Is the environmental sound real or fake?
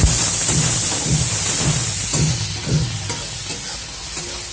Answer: real